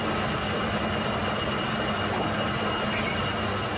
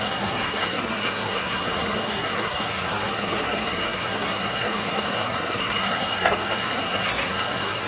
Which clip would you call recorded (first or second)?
first